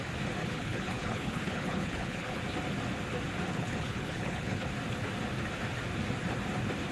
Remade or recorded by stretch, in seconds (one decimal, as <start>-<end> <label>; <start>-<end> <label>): 0.0-0.4 recorded; 0.4-2.4 remade; 2.4-3.5 recorded; 3.5-4.7 remade; 4.7-6.9 recorded